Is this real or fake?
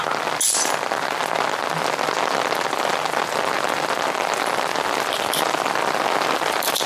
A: real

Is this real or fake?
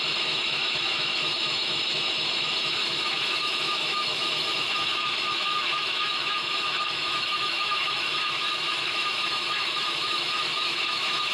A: fake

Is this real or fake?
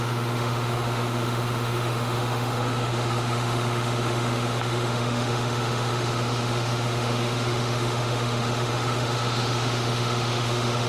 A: fake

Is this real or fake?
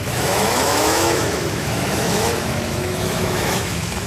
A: fake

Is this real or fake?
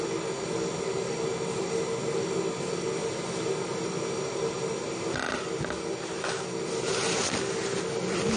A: real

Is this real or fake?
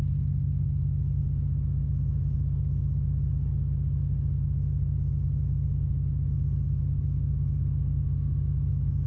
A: real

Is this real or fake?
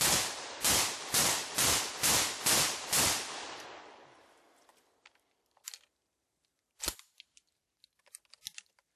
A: real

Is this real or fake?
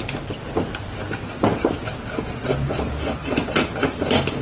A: real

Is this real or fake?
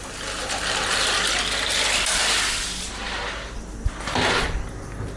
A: real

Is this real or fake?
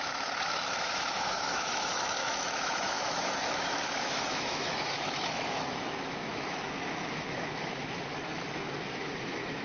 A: fake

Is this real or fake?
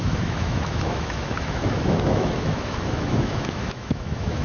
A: fake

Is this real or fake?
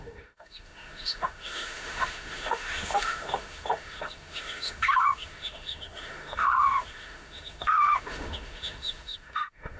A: fake